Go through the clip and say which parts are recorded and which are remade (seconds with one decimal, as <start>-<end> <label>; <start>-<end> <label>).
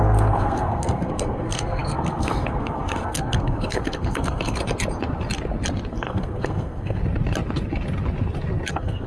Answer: 0.0-4.6 remade; 4.6-5.9 recorded; 5.9-7.0 remade; 7.0-8.7 recorded; 8.7-9.1 remade